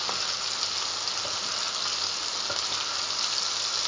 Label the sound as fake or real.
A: real